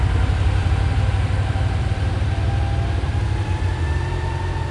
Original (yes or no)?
no